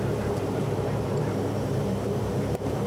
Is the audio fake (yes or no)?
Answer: yes